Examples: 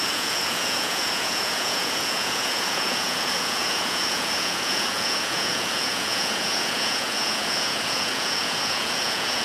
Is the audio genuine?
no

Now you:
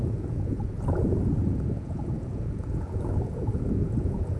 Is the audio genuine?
no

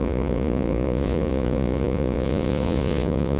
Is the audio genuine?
no